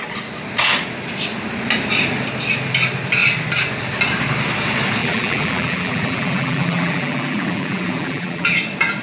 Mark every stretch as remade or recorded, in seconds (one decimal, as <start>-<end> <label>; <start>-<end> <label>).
0.0-5.0 recorded; 5.0-8.5 remade; 8.5-9.0 recorded